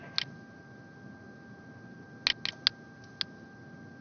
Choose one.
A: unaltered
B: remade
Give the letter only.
A